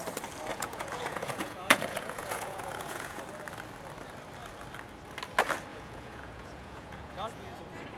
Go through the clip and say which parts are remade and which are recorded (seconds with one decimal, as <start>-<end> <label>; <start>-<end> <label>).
0.0-0.5 recorded; 0.5-3.2 remade; 3.2-5.7 recorded; 5.7-7.6 remade; 7.6-8.0 recorded